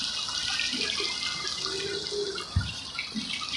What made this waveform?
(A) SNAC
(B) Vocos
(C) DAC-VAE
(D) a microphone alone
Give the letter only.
D